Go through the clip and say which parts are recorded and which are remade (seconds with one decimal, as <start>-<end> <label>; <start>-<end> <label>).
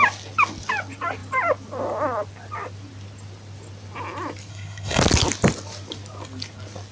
0.0-4.5 recorded; 4.5-5.0 remade; 5.0-6.9 recorded